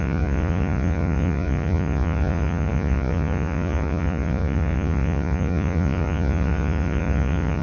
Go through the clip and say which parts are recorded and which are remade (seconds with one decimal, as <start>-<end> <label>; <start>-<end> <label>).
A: 0.0-7.6 remade